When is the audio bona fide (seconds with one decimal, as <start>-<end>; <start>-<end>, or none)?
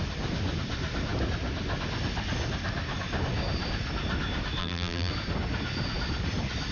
0.0-4.6; 5.1-6.7